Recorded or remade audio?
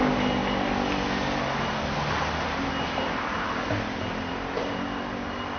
recorded